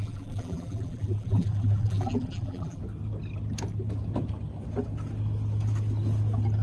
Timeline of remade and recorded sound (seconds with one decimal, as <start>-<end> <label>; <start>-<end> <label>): 0.0-2.8 remade; 2.8-6.6 recorded